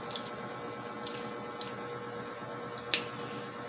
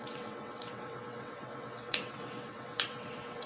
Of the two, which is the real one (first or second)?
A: first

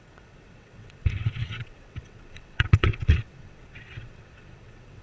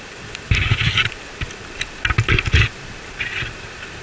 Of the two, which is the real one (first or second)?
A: second